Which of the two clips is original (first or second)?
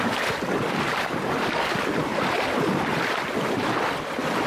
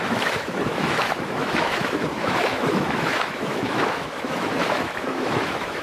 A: first